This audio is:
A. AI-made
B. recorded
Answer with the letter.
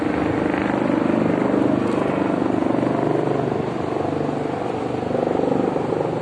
B